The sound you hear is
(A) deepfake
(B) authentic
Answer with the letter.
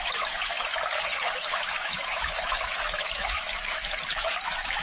A